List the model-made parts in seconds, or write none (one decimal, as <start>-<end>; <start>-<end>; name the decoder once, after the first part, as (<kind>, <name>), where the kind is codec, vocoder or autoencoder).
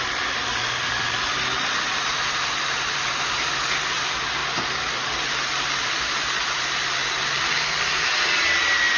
0.0-4.4 (vocoder, BigVGAN v2); 5.8-7.0; 8.0-9.0